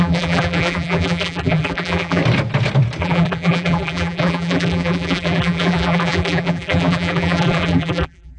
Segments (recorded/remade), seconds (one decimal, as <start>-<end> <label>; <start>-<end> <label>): 0.0-2.2 remade; 2.2-3.0 recorded; 3.0-8.4 remade